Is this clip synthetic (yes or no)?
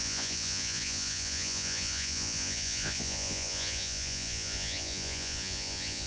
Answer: yes